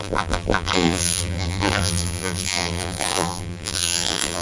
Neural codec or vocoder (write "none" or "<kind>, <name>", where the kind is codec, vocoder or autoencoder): vocoder, BigVGAN v2